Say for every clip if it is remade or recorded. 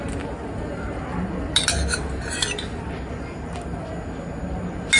recorded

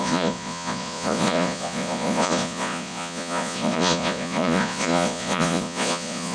remade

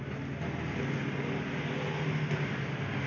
recorded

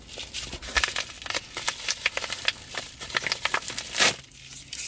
recorded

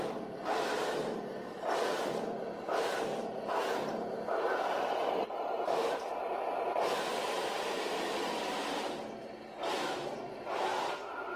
remade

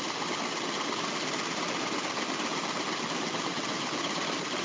recorded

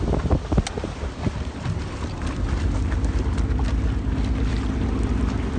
recorded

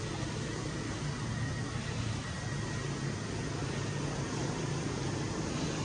recorded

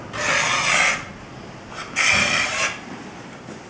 recorded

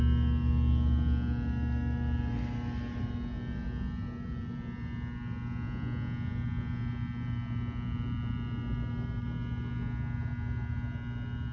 recorded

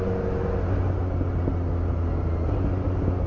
recorded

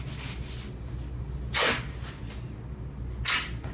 recorded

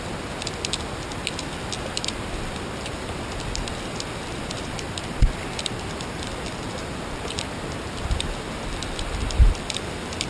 recorded